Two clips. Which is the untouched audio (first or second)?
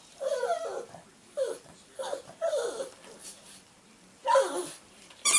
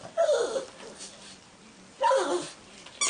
second